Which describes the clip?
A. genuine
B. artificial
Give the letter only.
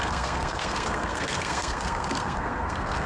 B